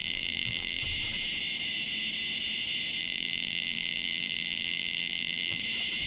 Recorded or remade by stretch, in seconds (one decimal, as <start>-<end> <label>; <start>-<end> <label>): 0.0-0.8 remade; 0.8-3.0 recorded; 3.0-5.6 remade; 5.6-6.1 recorded